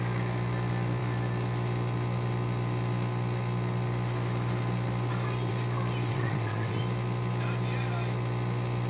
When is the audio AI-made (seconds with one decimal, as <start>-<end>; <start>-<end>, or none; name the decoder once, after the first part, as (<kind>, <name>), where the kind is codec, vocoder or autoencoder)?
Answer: 6.1-6.8 (vocoder, WaveNeXt)